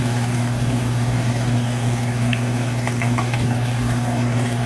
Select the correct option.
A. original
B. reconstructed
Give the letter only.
B